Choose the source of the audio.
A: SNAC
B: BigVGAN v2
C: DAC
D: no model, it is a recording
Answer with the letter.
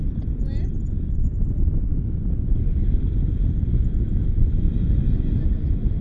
D